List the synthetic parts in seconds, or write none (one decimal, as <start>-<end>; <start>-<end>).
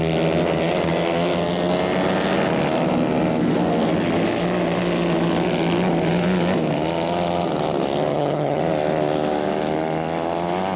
8.1-8.6